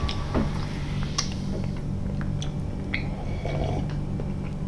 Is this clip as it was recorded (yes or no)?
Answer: yes